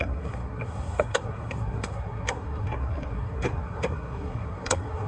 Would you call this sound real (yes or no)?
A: no